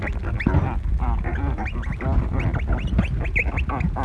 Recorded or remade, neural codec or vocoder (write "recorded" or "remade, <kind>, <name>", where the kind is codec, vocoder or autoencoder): recorded